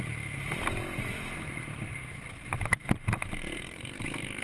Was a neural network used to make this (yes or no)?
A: no